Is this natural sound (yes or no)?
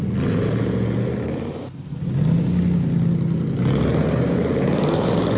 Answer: yes